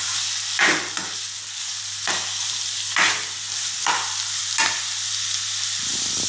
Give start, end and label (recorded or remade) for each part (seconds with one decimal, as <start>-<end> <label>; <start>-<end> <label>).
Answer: 0.0-6.3 recorded

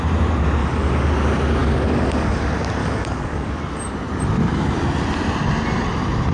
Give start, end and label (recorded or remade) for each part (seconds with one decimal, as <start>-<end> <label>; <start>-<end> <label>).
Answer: 0.0-0.6 recorded; 0.6-1.1 remade; 1.1-1.6 recorded; 1.6-2.4 remade; 2.4-2.8 recorded; 2.8-3.6 remade; 3.6-6.3 recorded

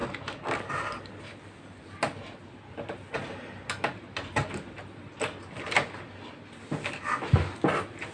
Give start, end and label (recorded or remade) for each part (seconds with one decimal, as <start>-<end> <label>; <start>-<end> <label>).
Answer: 0.0-8.1 recorded

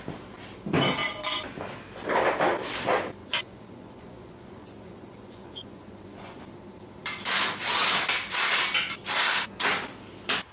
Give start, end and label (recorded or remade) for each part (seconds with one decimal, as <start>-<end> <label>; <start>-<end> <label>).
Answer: 0.0-3.2 recorded; 3.2-6.4 remade; 6.4-10.5 recorded